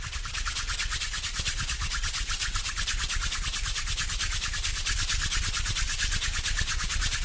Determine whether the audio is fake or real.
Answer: real